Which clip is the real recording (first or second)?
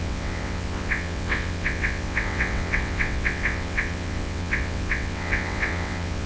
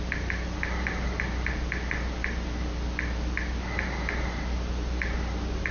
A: second